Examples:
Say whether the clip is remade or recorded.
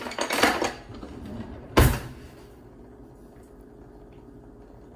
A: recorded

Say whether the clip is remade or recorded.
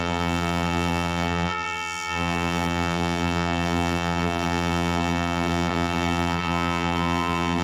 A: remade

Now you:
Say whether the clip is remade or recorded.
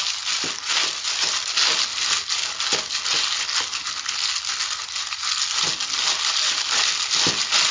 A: recorded